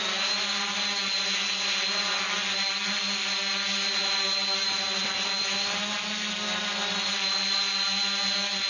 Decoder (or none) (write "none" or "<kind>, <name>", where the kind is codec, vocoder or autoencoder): none